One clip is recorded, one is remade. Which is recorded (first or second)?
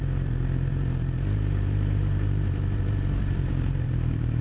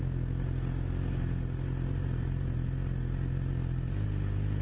second